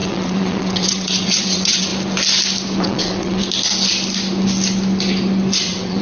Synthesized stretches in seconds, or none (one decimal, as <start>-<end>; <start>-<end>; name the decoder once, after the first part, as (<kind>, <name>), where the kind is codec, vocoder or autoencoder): 0.0-1.9 (vocoder, WaveNeXt); 2.8-3.4; 5.6-6.0